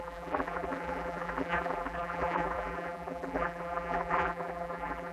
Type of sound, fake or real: fake